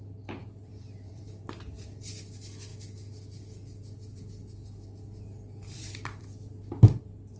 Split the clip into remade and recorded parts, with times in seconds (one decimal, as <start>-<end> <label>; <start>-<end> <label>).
0.0-0.4 recorded; 0.4-1.3 remade; 1.3-5.6 recorded; 5.6-6.2 remade; 6.2-7.4 recorded